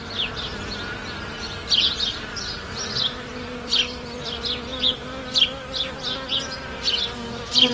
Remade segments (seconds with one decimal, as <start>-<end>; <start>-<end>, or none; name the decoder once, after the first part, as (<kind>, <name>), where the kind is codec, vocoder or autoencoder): none